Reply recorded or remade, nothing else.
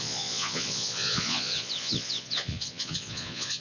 remade